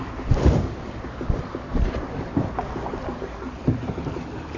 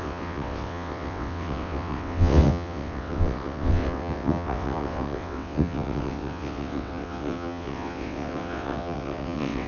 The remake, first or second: second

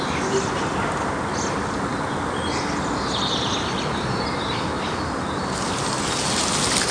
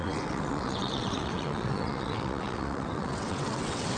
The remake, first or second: second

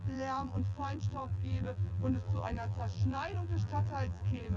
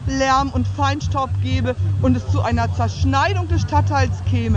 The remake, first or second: first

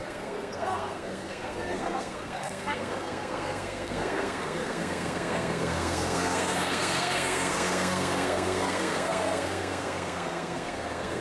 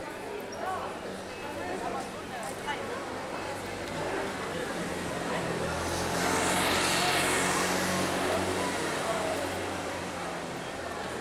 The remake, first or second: first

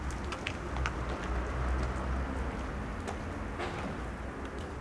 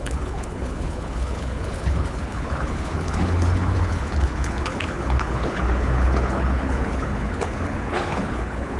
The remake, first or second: second